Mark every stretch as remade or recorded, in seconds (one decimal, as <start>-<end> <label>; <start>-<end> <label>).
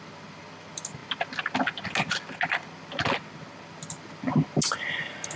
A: 0.0-5.4 recorded